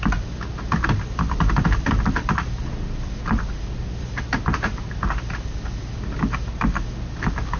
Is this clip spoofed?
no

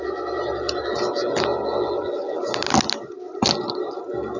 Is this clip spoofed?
no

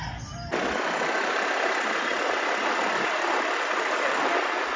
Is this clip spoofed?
no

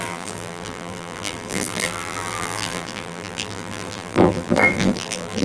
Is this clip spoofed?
yes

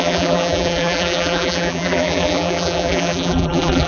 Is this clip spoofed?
yes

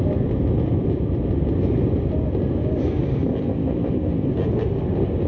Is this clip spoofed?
no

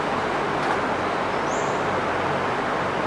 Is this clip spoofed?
no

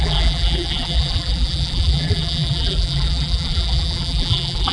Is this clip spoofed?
yes